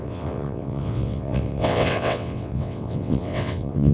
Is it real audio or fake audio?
fake